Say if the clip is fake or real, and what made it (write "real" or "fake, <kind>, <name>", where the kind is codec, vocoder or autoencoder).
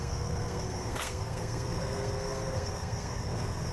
fake, codec, SNAC